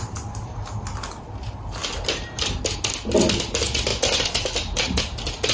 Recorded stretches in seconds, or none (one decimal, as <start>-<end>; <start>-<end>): 0.0-5.5